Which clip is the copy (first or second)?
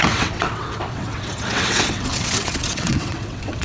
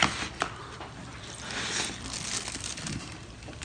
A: first